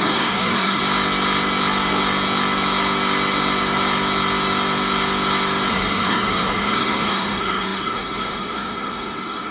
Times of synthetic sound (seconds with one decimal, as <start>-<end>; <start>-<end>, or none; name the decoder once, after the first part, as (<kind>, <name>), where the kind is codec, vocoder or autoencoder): 0.0-0.8 (codec, SNAC); 5.7-9.5